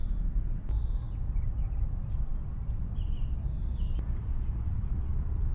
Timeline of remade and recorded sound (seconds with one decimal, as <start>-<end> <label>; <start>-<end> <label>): 0.0-4.6 recorded; 4.6-5.5 remade

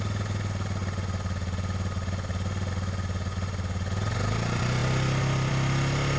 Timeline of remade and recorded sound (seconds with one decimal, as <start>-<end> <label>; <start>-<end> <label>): 0.0-6.2 recorded

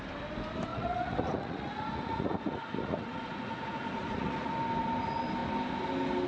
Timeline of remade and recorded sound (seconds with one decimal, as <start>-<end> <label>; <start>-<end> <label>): 0.0-0.7 recorded; 0.7-4.5 remade; 4.5-6.3 recorded

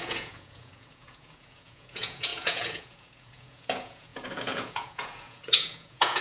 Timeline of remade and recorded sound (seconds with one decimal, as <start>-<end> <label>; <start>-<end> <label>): 0.0-6.2 remade

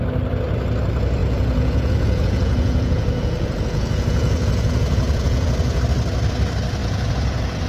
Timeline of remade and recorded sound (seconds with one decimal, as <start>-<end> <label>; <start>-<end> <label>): 0.0-1.2 recorded; 1.2-5.8 remade; 5.8-6.8 recorded; 6.8-7.7 remade